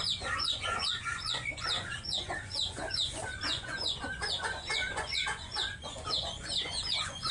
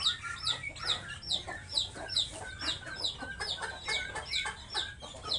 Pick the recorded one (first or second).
second